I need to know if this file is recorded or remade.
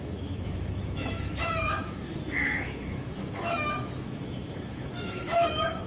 remade